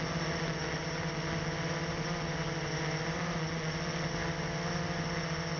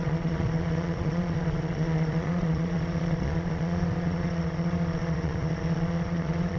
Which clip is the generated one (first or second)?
second